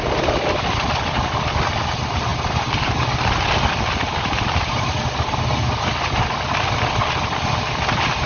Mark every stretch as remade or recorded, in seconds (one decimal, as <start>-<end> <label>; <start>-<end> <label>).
0.0-2.3 remade; 2.3-6.4 recorded; 6.4-8.3 remade